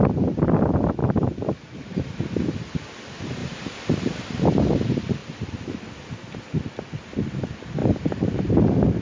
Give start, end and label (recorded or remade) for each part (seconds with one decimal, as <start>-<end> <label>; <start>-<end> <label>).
0.0-1.0 recorded; 1.0-2.5 remade; 2.5-3.4 recorded; 3.4-4.5 remade; 4.5-5.2 recorded; 5.2-5.7 remade; 5.7-7.8 recorded; 7.8-8.5 remade; 8.5-9.0 recorded